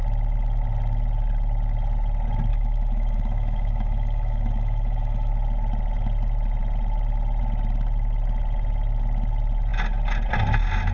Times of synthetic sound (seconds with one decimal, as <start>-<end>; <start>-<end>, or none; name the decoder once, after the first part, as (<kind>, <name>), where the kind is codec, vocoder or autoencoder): 2.5-5.3 (autoencoder, DAC-VAE)

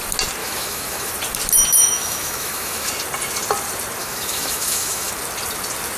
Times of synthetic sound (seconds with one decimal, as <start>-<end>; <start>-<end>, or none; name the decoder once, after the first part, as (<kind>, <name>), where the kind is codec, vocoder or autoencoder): 0.4-1.1 (autoencoder, DAC-VAE); 1.8-2.9; 4.0-5.1